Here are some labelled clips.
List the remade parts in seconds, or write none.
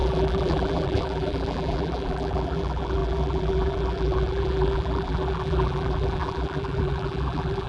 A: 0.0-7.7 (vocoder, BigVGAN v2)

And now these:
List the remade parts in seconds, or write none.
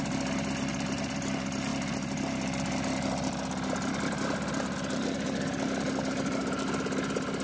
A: none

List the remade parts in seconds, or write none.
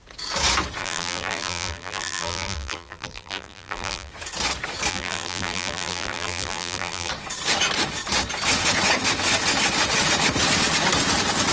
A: 0.8-4.1 (vocoder, BigVGAN v2); 4.9-7.1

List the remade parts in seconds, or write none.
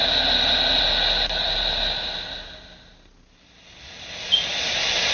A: none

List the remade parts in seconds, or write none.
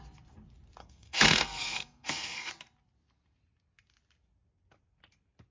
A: 0.8-2.5 (codec, SNAC)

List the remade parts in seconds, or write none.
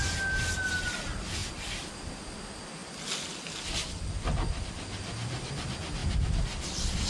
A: none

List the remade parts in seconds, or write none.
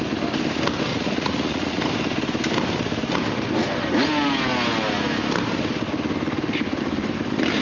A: 0.9-1.8 (vocoder, Vocos)